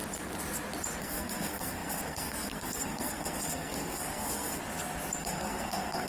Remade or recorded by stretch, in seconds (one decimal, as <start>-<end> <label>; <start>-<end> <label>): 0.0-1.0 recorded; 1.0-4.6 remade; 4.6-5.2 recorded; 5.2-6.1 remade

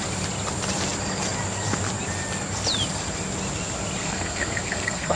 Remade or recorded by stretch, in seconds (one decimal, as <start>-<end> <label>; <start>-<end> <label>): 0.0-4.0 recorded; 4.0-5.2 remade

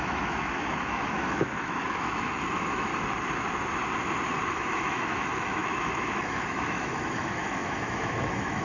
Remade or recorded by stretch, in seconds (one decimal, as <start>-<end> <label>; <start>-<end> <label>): 0.0-2.9 remade; 2.9-4.5 recorded; 4.5-8.6 remade

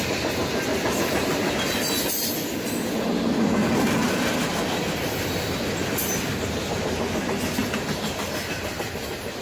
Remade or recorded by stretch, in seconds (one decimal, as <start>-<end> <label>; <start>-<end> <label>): 0.0-0.7 recorded; 0.7-1.5 remade; 1.5-9.4 recorded

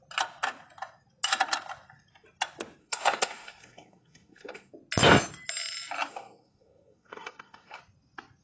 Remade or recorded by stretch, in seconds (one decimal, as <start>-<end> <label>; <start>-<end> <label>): 0.0-2.8 recorded; 2.8-4.7 remade; 4.7-6.1 recorded; 6.1-7.8 remade; 7.8-8.4 recorded